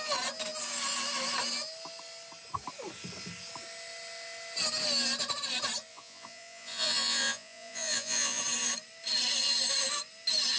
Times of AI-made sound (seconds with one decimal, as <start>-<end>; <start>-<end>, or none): 5.9-8.4